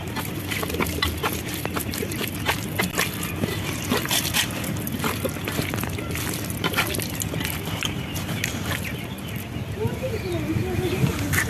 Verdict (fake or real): real